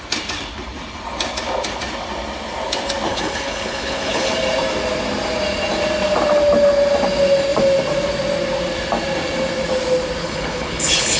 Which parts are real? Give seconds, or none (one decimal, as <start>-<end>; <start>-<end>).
0.0-3.1; 4.3-10.2